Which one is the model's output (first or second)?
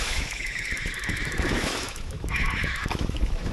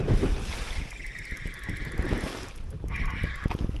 first